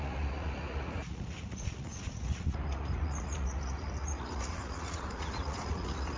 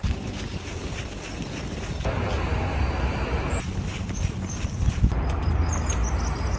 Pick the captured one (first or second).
second